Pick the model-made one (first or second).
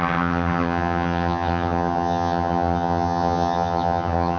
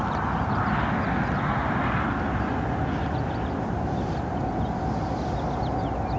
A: first